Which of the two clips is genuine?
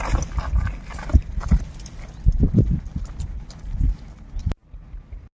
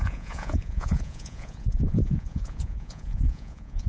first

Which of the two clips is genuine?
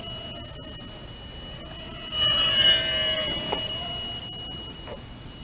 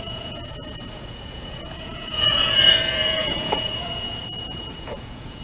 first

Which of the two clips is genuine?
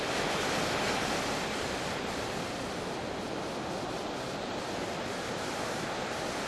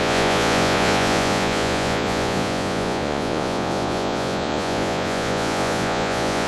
first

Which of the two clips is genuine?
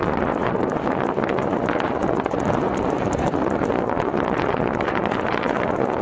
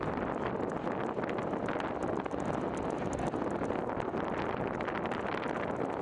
second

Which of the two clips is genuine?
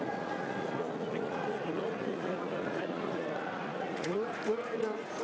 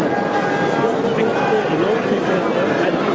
second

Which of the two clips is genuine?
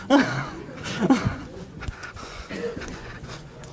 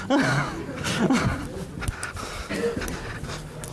second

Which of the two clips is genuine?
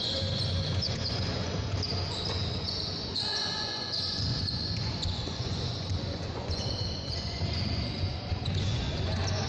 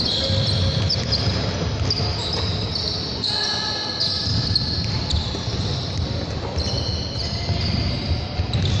second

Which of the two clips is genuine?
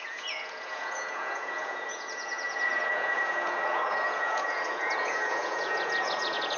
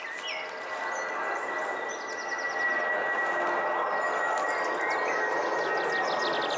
second